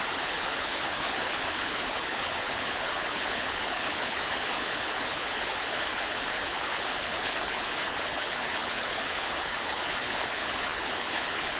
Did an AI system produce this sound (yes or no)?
yes